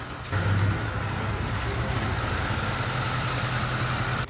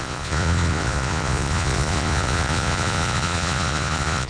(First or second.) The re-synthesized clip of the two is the second